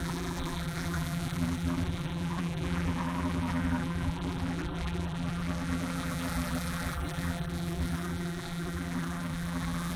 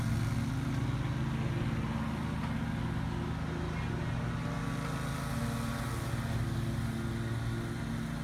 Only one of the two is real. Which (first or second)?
second